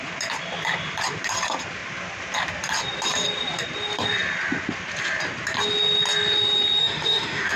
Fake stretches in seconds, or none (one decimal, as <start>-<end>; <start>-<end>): 6.8-7.6